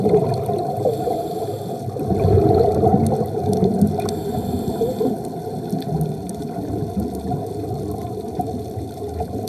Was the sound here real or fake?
real